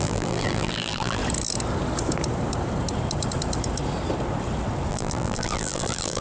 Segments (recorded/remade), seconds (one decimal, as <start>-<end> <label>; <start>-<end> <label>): 0.0-1.2 remade; 1.2-4.9 recorded; 4.9-6.2 remade